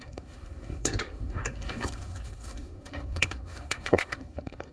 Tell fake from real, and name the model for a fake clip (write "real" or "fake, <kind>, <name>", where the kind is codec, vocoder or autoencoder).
fake, codec, SNAC